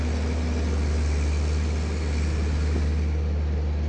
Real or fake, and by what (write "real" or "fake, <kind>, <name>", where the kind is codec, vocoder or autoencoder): real